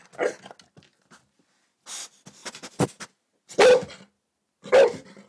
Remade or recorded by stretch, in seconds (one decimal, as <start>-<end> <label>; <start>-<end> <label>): 0.0-5.3 recorded